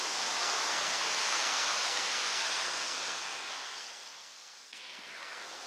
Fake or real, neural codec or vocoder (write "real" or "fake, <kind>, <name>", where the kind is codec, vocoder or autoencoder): fake, codec, SNAC